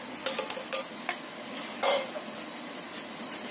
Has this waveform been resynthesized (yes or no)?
no